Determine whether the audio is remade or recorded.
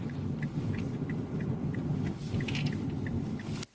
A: recorded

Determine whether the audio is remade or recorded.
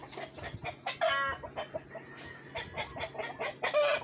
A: recorded